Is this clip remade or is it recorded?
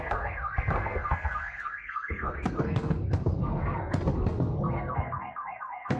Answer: remade